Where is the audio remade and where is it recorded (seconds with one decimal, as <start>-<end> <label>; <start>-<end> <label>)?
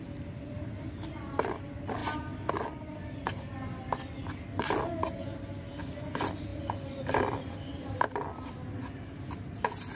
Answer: 0.0-10.0 recorded